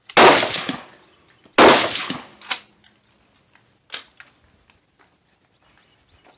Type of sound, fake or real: real